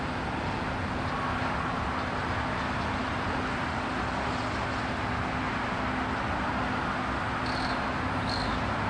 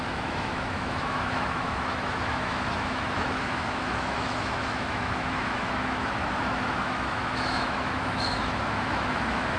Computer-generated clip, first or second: second